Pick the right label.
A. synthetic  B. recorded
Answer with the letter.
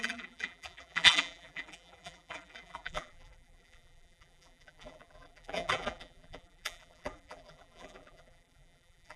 A